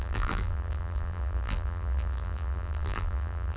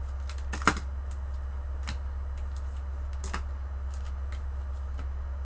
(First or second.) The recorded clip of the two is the second